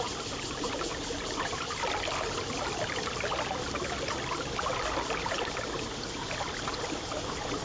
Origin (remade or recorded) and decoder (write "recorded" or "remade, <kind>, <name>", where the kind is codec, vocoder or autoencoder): recorded